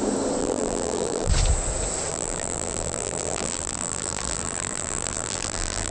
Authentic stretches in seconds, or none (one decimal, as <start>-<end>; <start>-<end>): 0.0-0.4; 1.3-2.1